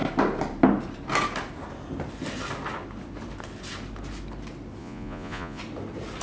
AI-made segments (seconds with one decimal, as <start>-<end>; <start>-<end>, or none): 4.8-5.6